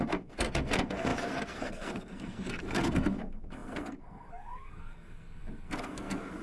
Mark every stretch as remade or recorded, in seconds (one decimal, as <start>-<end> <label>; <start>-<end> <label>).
0.0-6.4 remade